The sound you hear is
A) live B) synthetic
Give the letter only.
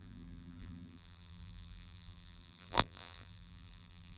B